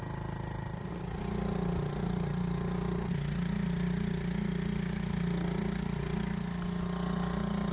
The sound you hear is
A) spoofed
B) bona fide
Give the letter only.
B